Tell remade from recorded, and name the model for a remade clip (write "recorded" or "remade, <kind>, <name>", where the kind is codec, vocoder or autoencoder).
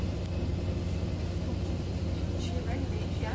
remade, vocoder, BigVGAN v2